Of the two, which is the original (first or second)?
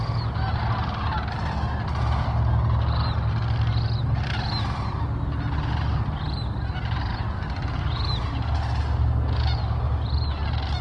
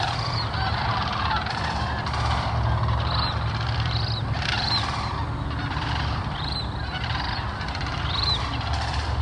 first